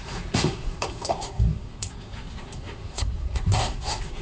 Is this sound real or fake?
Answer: fake